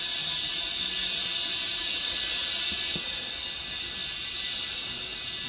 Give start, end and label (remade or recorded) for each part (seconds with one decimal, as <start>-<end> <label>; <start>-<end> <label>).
0.0-5.5 recorded